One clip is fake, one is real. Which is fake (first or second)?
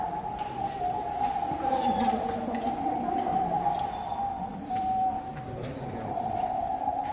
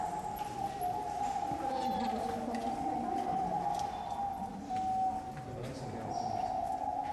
first